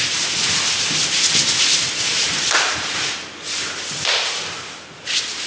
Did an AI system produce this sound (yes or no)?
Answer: no